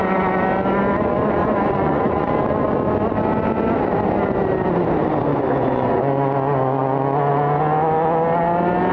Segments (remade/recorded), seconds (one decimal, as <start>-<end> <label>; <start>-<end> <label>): 0.0-1.4 recorded; 1.4-2.3 remade; 2.3-5.3 recorded; 5.3-6.0 remade; 6.0-8.9 recorded